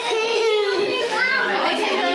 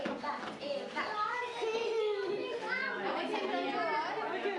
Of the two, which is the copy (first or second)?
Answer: first